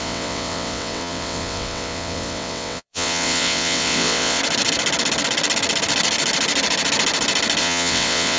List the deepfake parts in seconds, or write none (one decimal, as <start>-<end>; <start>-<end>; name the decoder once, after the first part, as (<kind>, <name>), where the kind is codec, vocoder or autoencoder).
0.0-4.4 (vocoder, WaveNeXt); 7.6-8.4